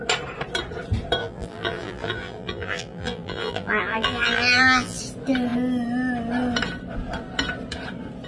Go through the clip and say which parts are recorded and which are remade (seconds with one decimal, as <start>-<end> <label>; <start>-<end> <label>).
0.0-1.2 recorded; 1.2-5.0 remade; 5.0-8.3 recorded